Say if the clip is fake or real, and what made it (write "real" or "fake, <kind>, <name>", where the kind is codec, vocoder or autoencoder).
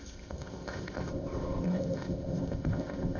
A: fake, codec, ZipCodec